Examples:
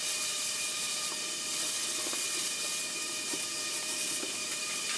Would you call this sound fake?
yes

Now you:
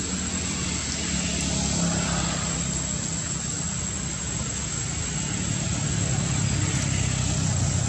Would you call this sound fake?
no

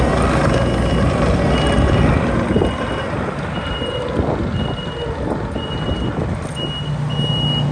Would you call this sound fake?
no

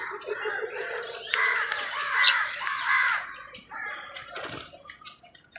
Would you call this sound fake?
yes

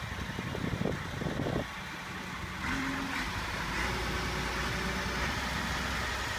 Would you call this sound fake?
no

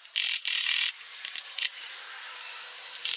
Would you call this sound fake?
yes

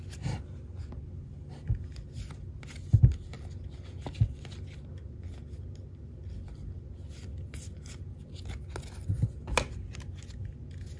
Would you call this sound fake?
no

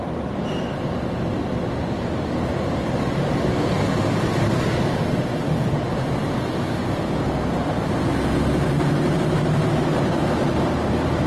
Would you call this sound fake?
no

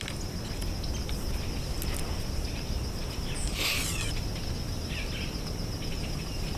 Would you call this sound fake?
no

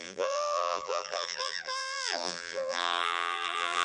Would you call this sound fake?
yes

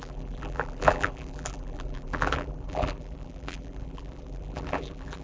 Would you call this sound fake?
yes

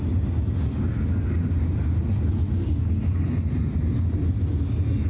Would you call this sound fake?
no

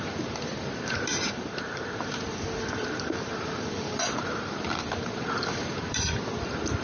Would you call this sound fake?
yes